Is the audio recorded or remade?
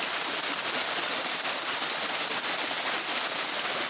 recorded